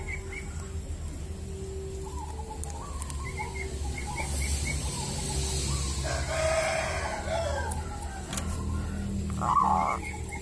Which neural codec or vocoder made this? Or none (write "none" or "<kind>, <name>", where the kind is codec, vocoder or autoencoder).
none